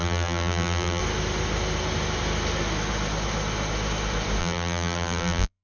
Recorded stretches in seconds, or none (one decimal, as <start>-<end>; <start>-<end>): 1.0-4.4